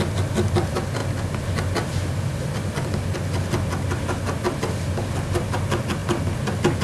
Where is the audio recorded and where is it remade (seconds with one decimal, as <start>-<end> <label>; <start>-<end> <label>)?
0.0-6.8 recorded